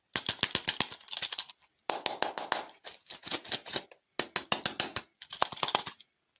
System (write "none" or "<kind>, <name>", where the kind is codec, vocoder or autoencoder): none